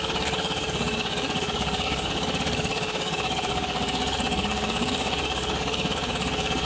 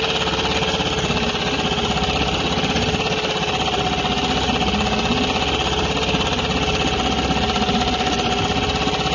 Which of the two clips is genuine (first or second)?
second